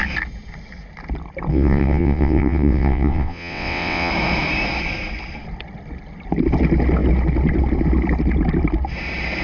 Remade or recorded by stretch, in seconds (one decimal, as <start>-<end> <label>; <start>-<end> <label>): 0.0-1.5 recorded; 1.5-4.1 remade; 4.1-9.4 recorded